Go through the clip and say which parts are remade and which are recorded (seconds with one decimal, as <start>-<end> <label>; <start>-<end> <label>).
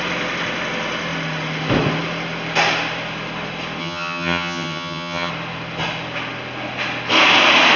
0.0-3.8 recorded; 3.8-5.3 remade; 5.3-7.8 recorded